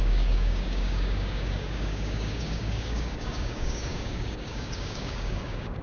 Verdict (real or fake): fake